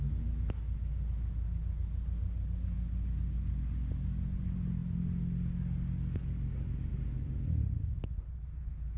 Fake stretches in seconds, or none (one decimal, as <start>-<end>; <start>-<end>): 6.9-8.6

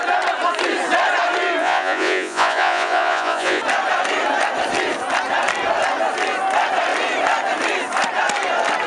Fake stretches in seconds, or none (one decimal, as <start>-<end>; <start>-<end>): 1.6-3.6